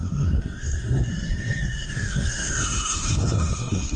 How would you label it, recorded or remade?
remade